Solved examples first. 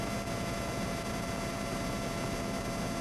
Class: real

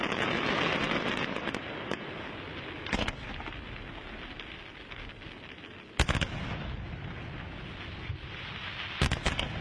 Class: real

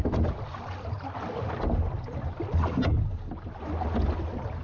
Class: real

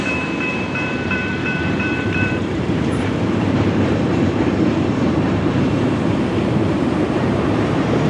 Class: fake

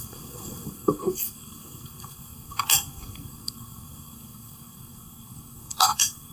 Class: fake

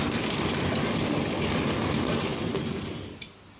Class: real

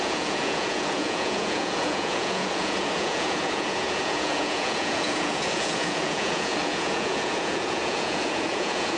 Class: fake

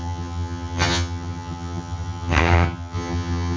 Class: fake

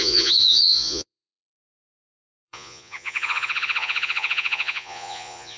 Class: fake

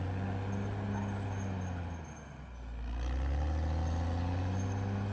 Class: real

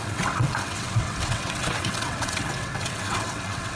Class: fake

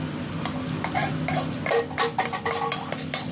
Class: real